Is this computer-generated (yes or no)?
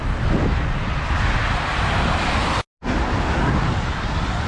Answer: no